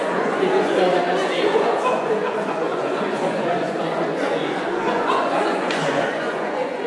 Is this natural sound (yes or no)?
no